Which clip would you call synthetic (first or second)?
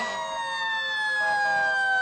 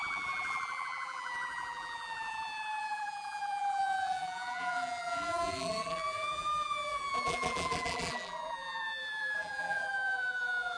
second